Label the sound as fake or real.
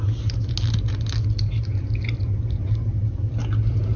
real